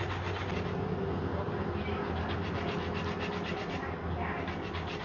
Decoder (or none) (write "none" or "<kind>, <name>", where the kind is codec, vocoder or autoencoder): none